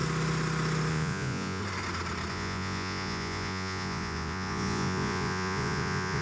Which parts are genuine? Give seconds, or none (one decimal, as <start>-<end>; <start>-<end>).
0.0-0.9; 1.6-2.3